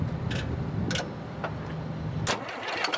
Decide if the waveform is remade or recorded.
recorded